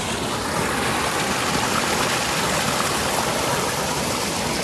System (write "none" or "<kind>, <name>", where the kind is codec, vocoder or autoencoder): none